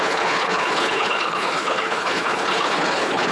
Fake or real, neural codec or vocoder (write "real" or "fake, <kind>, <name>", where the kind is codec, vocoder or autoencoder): fake, codec, HILCodec